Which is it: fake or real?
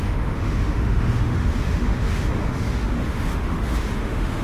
fake